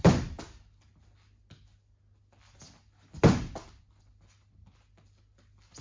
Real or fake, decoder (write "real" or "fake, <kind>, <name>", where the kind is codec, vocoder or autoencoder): real